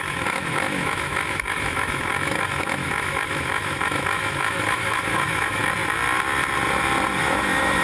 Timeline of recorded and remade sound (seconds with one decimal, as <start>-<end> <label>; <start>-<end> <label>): 0.0-5.6 remade; 5.6-7.2 recorded; 7.2-7.8 remade